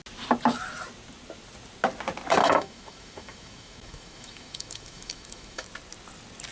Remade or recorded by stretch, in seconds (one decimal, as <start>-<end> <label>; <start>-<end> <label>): 0.0-2.4 recorded; 2.4-5.7 remade; 5.7-6.5 recorded